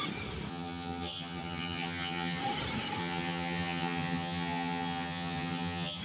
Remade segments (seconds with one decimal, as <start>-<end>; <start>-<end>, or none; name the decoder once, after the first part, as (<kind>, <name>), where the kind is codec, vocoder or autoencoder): 0.5-2.4 (vocoder, HiFi-GAN); 3.0-6.0